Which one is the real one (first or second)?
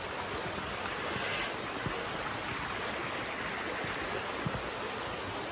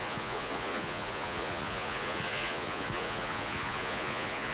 first